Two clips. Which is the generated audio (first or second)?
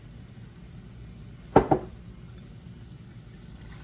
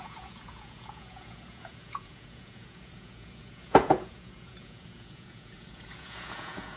second